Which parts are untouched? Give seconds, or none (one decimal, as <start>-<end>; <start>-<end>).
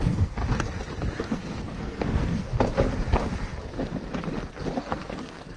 0.4-1.2; 2.5-4.8